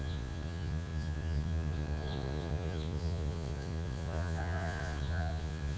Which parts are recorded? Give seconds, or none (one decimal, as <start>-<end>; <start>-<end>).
none

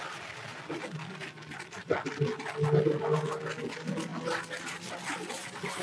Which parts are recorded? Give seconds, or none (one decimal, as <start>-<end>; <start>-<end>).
0.0-5.8

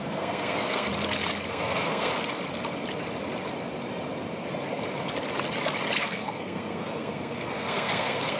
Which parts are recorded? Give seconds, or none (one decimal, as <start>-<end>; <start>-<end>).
0.9-1.5; 2.1-6.0

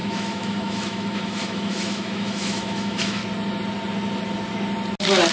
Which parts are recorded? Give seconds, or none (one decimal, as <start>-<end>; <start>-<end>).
3.2-5.3

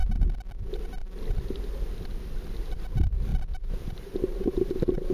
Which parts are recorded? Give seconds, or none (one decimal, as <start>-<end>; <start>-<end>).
0.0-3.3